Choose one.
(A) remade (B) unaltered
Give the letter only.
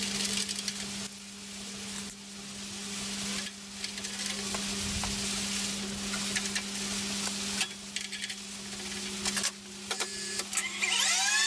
B